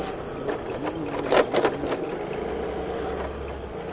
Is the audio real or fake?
real